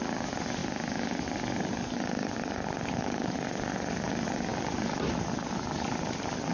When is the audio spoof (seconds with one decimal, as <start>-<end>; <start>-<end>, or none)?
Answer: none